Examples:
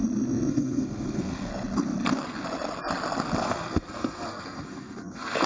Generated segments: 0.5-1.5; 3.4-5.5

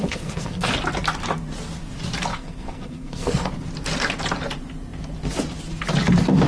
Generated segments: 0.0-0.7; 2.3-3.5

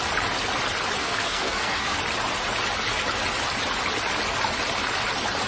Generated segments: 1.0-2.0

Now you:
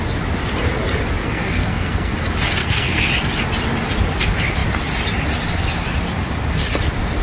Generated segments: 1.2-2.1; 2.6-3.1

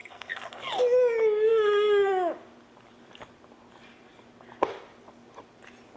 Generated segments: 0.0-0.5

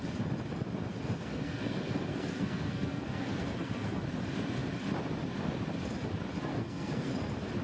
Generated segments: 0.9-4.0; 6.5-7.1

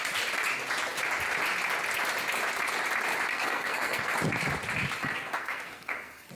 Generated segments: 3.3-4.1; 5.0-6.3

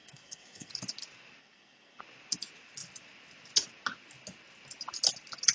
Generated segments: 0.0-0.7; 1.4-2.0